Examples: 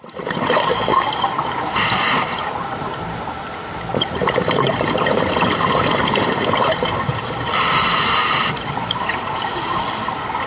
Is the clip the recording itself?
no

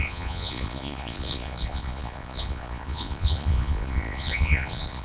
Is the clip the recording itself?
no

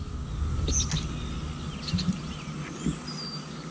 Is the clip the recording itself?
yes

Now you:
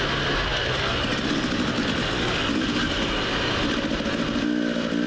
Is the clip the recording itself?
yes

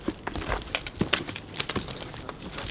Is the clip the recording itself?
yes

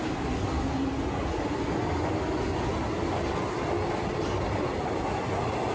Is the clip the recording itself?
yes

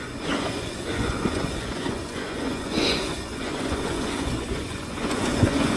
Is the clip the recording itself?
no